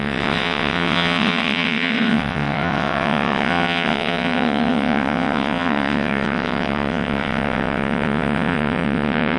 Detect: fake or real fake